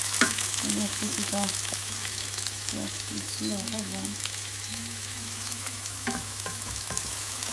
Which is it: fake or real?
fake